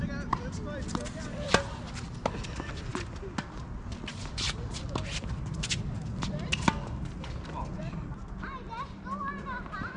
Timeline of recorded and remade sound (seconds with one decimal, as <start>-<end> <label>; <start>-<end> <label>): 0.0-10.0 recorded